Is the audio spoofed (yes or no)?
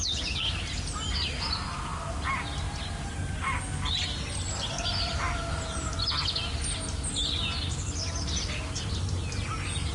no